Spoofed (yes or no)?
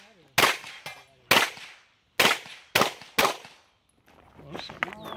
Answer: no